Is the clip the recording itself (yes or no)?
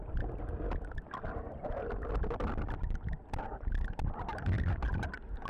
yes